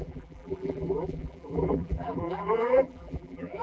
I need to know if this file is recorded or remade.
remade